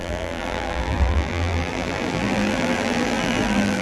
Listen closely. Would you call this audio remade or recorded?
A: remade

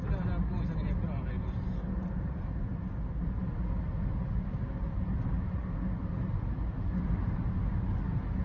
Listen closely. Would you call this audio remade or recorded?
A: recorded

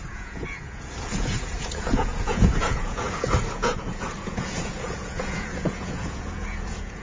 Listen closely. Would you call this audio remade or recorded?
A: remade